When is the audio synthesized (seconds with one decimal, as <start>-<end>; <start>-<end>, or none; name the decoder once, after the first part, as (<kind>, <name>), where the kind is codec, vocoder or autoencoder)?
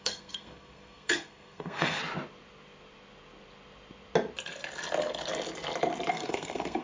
0.0-2.0 (codec, SNAC); 6.1-6.8